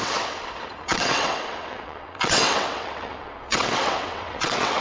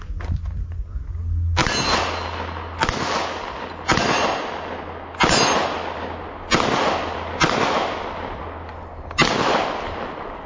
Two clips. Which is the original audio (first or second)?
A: second